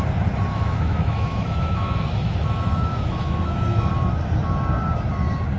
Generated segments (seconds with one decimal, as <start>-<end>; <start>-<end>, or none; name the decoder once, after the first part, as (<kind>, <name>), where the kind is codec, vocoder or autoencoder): 0.5-3.9 (autoencoder, DAC-VAE)

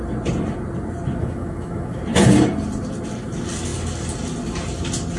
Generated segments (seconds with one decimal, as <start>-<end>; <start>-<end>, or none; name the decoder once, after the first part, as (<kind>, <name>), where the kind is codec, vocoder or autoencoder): 1.2-2.0 (autoencoder, DAC-VAE)

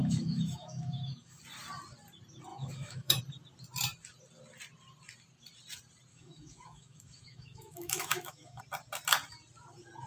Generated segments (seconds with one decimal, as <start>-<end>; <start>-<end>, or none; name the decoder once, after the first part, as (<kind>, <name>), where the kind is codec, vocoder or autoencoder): 0.0-1.4 (autoencoder, DAC-VAE); 2.5-3.2; 6.1-8.6